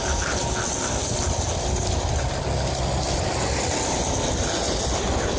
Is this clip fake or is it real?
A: real